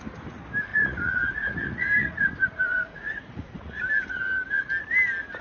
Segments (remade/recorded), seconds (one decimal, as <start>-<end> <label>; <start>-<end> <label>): 0.0-0.7 recorded; 0.7-3.9 remade; 3.9-5.4 recorded